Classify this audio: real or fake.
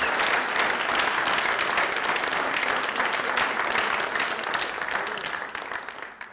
real